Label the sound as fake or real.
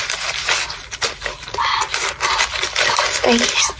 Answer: real